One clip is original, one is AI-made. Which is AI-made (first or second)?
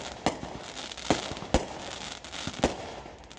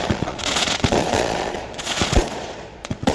second